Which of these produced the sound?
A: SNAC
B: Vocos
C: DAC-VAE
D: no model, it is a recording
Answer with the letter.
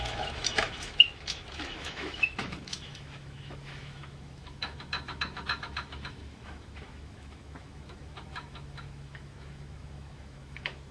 C